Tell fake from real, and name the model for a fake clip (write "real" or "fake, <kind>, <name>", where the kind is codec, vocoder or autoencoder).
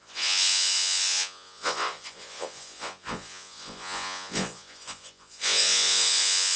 fake, vocoder, Vocos